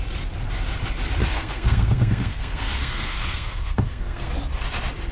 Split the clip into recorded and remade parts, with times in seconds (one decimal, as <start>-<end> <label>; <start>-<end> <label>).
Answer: 0.0-1.2 recorded; 1.2-4.3 remade; 4.3-5.1 recorded